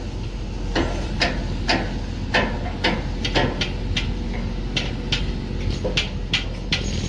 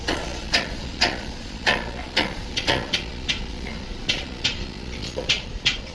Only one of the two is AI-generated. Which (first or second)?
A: second